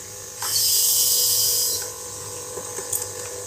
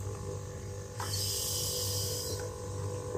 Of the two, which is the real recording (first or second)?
second